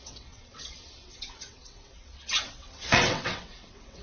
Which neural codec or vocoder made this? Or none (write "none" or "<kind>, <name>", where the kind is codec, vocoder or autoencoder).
vocoder, WaveNeXt